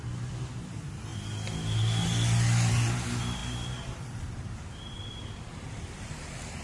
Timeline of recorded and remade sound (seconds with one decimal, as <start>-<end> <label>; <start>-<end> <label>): 0.0-1.1 remade; 1.1-2.7 recorded; 2.7-6.6 remade